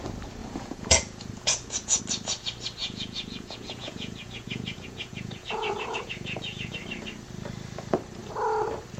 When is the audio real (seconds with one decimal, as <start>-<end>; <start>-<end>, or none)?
0.0-0.4; 2.0-2.8; 6.7-9.0